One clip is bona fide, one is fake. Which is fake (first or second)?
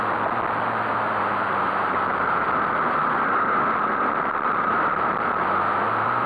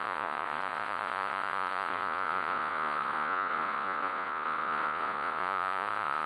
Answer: second